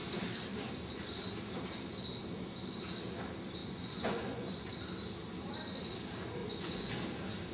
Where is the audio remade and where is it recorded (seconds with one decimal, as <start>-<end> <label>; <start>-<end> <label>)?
0.0-3.6 recorded; 3.6-4.7 remade; 4.7-6.4 recorded; 6.4-6.9 remade; 6.9-7.5 recorded